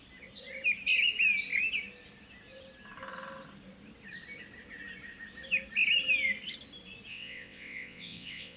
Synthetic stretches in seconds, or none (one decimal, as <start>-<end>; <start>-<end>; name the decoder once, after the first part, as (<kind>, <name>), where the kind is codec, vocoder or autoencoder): 7.1-8.6 (vocoder, WaveNeXt)